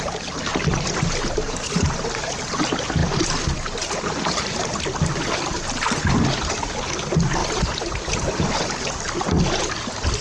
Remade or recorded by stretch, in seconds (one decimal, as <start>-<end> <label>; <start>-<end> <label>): 0.0-10.2 recorded